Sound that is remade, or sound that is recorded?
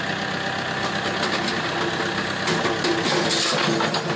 recorded